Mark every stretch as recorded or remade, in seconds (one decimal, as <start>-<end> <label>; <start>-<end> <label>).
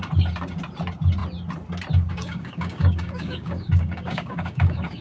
0.0-2.1 recorded; 2.1-5.0 remade